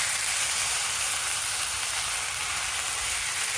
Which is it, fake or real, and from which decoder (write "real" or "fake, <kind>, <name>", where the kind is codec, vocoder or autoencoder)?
real